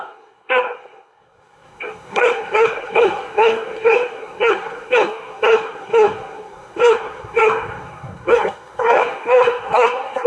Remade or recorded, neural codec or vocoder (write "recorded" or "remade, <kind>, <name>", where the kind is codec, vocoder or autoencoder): remade, codec, SNAC